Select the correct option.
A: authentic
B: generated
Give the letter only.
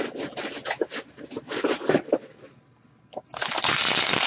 A